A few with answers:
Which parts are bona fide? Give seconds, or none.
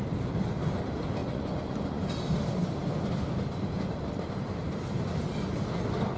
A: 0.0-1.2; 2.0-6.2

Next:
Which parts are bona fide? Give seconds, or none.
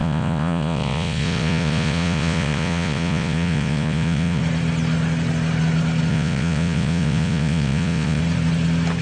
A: 4.4-6.1; 8.2-9.0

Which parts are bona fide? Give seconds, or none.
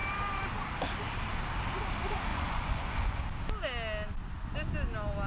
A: 0.0-2.3; 3.2-5.3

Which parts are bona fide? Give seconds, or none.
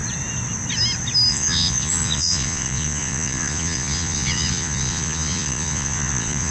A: 0.0-1.3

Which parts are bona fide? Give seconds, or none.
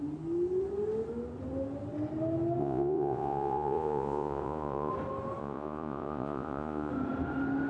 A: 0.0-2.6; 4.9-5.4; 6.9-7.7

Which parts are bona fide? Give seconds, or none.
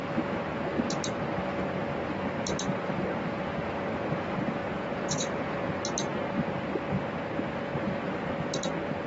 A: 0.0-4.6; 5.8-9.1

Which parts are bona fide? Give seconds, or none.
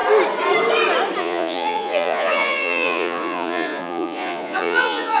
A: 0.0-1.2